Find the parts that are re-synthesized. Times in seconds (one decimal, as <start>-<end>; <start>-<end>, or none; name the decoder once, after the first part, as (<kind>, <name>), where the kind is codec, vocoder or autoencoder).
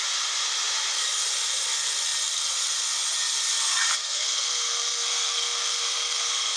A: 4.0-6.6 (codec, SNAC)